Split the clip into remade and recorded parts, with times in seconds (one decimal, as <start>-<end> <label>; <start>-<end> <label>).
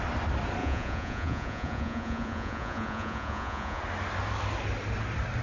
0.0-0.6 recorded; 0.6-3.8 remade; 3.8-5.4 recorded